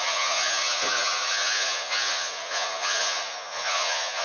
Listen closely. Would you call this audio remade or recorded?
remade